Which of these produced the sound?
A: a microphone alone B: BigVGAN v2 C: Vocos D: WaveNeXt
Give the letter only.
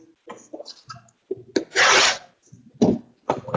A